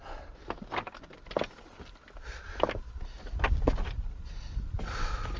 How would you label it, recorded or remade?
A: recorded